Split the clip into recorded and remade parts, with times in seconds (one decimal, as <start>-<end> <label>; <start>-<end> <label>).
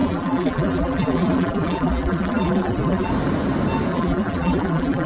0.0-3.1 remade; 3.1-3.9 recorded; 3.9-5.1 remade